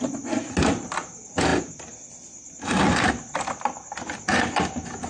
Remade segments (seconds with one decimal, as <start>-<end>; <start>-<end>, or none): none